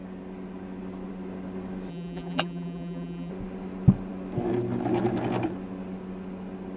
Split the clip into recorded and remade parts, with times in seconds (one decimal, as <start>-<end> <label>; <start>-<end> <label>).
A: 0.0-1.9 recorded; 1.9-3.3 remade; 3.3-6.8 recorded